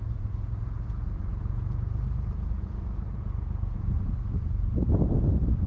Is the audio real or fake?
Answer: fake